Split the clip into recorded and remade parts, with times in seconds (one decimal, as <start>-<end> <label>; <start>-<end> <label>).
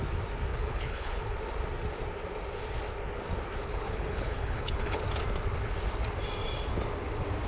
0.0-0.5 recorded; 0.5-1.2 remade; 1.2-3.6 recorded; 3.6-5.0 remade; 5.0-7.5 recorded